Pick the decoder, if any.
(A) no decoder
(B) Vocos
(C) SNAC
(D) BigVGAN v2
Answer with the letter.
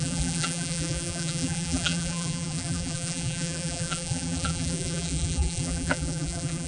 D